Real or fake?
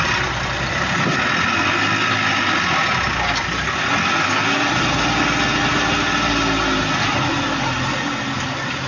real